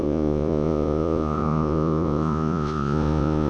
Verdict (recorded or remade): remade